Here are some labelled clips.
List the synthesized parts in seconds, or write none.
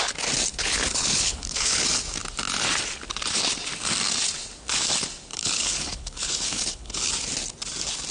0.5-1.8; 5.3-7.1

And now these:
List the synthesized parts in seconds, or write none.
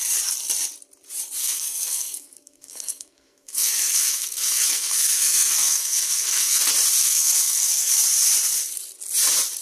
1.4-6.6; 7.0-7.9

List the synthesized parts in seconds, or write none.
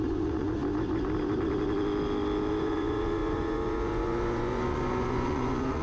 0.0-0.6; 2.6-5.8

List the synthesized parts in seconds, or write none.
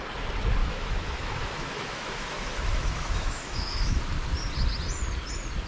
0.6-4.0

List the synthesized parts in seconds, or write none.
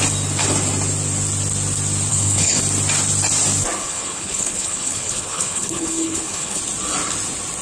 2.1-2.6; 3.8-6.6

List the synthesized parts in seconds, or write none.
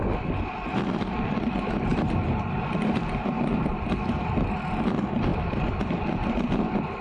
1.9-3.7; 5.3-5.8